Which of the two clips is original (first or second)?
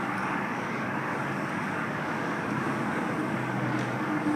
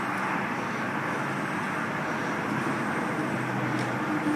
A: second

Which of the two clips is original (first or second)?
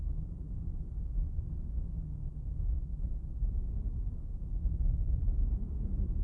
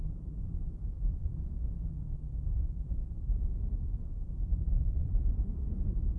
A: first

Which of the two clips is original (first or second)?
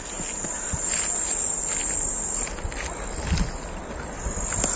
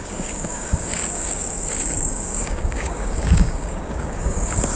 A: first